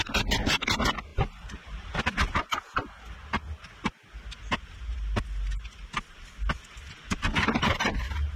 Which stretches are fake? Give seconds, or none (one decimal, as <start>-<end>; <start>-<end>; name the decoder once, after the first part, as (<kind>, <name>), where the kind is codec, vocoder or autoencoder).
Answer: 1.1-1.9 (vocoder, BigVGAN v2)

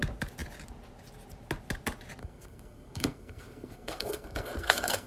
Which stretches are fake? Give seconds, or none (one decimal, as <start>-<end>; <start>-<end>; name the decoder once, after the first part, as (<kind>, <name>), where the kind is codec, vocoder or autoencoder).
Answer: 2.2-5.1 (codec, SNAC)

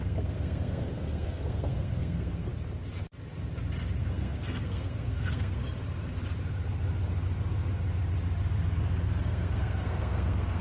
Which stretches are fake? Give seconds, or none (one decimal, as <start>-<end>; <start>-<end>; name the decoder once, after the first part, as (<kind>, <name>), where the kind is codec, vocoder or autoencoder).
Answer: 0.0-2.5 (codec, SNAC); 4.0-5.6; 9.2-10.6

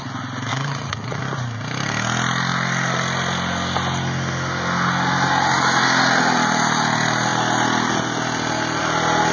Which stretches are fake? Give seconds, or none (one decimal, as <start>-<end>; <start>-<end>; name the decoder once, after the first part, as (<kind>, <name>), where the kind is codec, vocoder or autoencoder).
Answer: 0.5-1.2 (vocoder, Vocos)